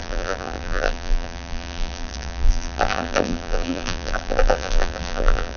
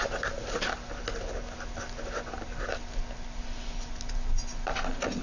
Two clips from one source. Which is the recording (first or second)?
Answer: second